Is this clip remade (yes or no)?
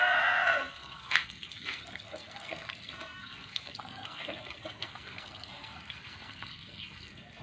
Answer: yes